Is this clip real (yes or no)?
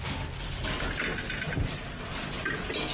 yes